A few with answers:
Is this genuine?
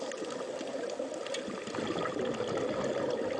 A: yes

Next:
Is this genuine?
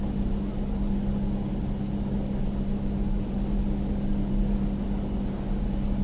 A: yes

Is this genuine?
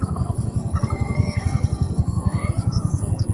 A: no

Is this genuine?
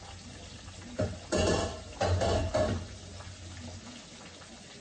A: yes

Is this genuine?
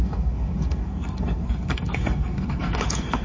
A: no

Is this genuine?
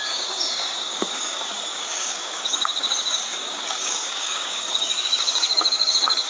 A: no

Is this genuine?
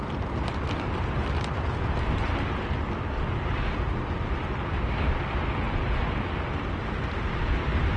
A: yes